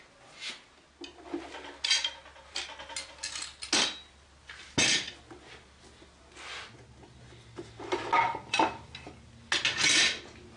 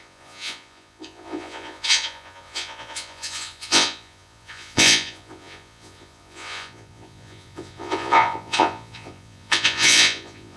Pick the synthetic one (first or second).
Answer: second